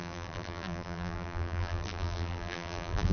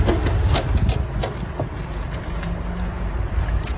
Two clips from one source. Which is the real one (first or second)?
second